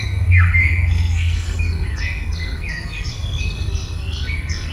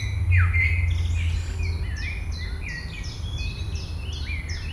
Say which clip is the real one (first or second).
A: second